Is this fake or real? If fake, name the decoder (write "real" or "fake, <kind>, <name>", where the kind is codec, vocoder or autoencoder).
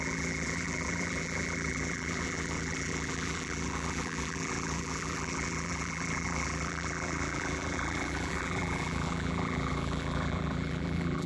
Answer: fake, vocoder, BigVGAN v2